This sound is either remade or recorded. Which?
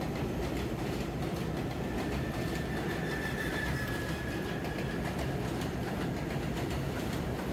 recorded